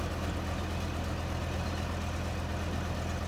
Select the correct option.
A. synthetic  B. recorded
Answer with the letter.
B